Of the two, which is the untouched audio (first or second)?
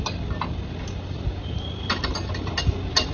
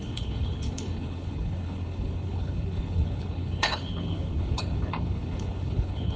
first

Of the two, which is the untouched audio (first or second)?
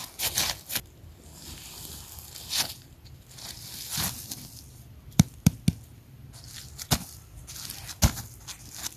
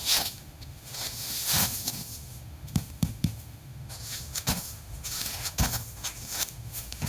first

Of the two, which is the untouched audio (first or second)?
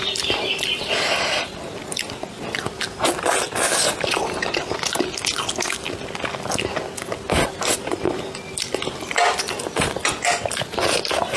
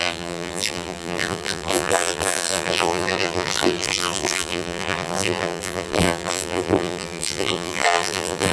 first